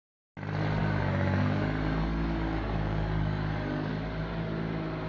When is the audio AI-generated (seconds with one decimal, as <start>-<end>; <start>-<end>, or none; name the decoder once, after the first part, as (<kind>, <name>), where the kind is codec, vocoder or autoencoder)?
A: 0.8-3.9 (codec, DAC)